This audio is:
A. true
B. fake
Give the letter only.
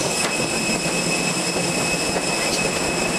A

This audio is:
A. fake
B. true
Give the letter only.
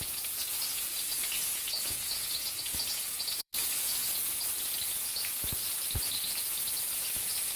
A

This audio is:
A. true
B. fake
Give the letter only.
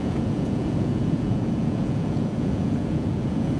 B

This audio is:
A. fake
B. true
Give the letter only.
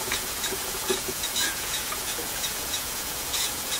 A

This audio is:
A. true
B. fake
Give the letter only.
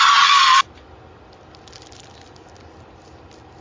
A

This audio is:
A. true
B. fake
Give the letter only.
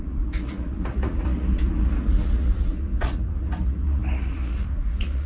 B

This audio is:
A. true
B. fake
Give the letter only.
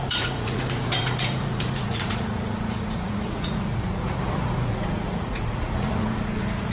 B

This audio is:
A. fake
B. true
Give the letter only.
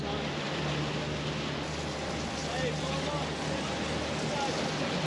B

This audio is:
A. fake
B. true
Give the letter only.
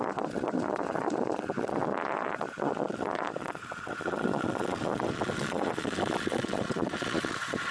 A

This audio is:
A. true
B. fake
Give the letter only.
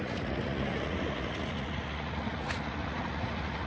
B